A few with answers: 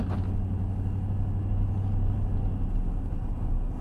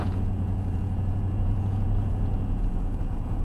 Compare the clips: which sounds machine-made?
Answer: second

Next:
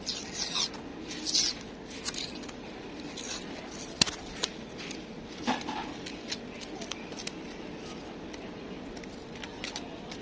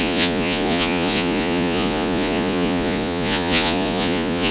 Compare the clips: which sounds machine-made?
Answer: second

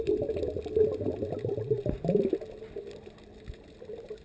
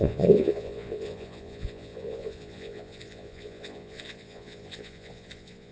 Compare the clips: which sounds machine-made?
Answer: second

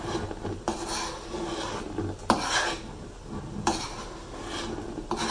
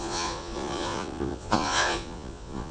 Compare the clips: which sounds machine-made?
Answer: second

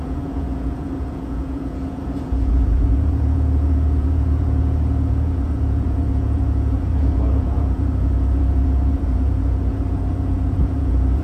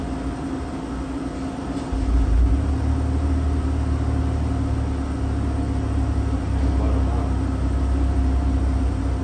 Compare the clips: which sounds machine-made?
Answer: first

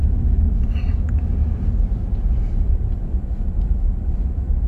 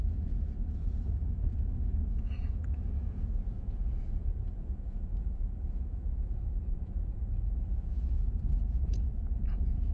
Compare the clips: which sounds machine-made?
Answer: second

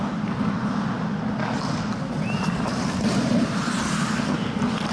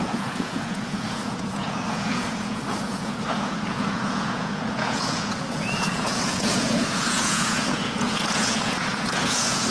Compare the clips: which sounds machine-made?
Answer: second